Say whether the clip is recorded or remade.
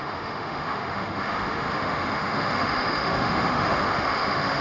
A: remade